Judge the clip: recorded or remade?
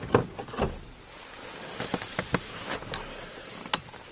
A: recorded